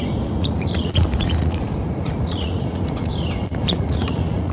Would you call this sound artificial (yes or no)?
yes